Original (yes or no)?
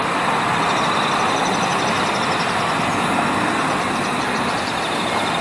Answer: yes